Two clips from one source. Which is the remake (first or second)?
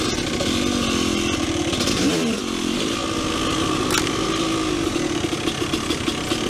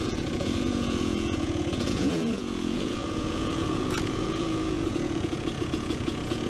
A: second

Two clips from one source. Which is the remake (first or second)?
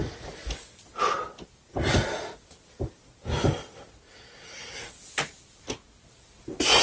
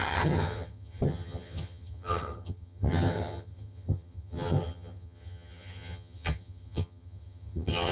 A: second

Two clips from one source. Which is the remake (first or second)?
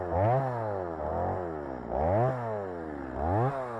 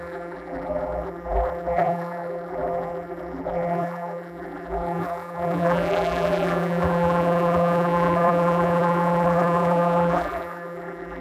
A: second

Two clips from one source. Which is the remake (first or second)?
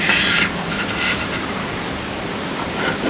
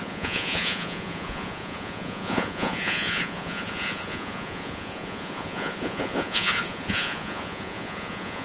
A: second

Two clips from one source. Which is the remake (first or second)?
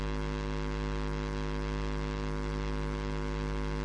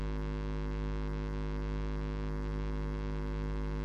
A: first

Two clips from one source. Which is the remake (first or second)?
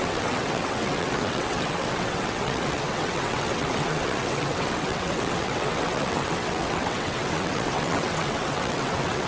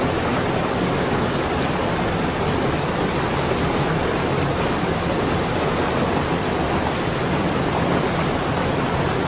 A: first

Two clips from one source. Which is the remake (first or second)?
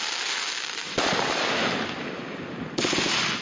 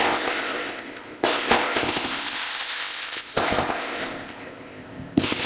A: second